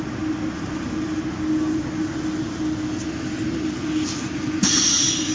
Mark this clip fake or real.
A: real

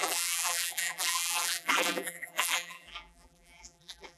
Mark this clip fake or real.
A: fake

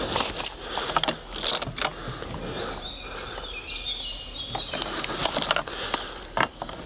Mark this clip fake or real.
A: real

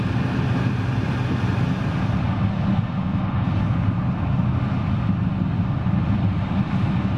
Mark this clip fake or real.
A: real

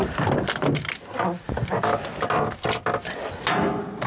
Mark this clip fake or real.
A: real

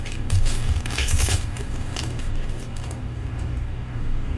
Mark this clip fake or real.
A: fake